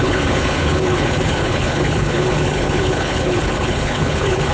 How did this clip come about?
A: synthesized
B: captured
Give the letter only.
A